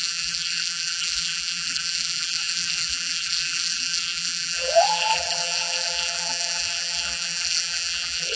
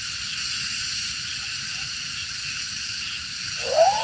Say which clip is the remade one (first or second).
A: first